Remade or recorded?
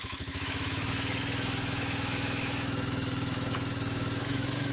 remade